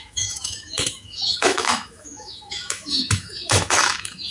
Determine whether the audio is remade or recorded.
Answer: remade